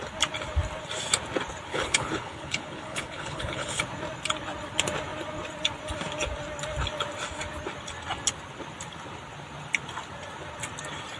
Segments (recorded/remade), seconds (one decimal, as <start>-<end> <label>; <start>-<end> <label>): 0.0-1.7 recorded; 1.7-3.8 remade; 3.8-11.2 recorded

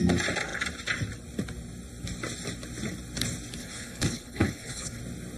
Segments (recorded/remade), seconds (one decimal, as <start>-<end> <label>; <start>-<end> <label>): 0.0-3.6 recorded; 3.6-5.0 remade; 5.0-5.4 recorded

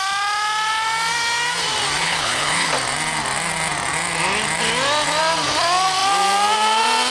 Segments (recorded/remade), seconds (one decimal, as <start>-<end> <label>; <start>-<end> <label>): 0.0-2.0 recorded; 2.0-2.7 remade; 2.7-7.1 recorded

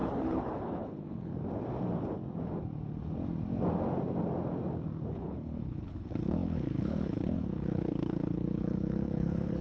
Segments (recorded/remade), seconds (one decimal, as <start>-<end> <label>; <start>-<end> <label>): 0.0-1.3 remade; 1.3-5.1 recorded; 5.1-9.6 remade

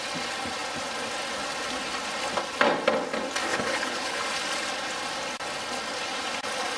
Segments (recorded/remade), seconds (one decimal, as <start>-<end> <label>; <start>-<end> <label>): 0.0-3.5 recorded; 3.5-4.2 remade; 4.2-6.8 recorded

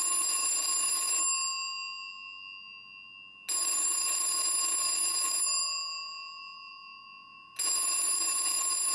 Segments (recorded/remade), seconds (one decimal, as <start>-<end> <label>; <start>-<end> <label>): 0.0-8.9 recorded